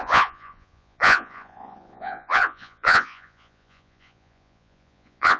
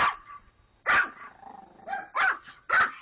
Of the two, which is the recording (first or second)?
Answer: second